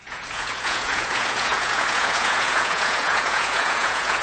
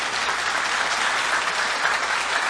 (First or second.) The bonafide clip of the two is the second